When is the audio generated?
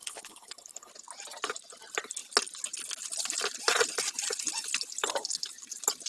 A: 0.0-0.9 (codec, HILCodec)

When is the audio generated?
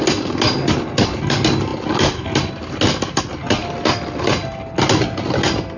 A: none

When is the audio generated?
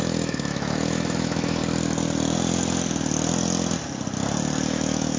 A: 0.0-1.6 (autoencoder, DAC-VAE); 4.7-5.2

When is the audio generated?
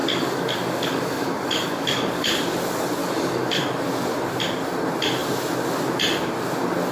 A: 0.0-2.3 (codec, DAC); 3.0-3.6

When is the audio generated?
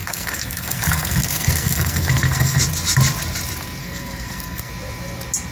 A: 0.0-2.6 (codec, SNAC); 3.8-4.7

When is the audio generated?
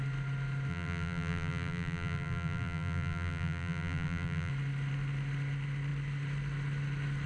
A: 0.7-4.5 (vocoder, BigVGAN v2)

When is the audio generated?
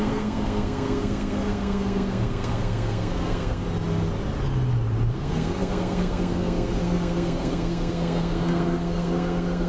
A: 0.0-3.6 (codec, SNAC); 5.1-9.7